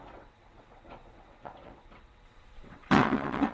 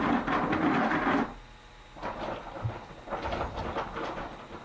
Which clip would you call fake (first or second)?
first